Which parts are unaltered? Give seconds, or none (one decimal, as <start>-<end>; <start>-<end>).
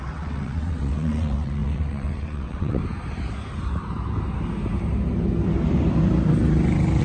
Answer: 2.8-7.0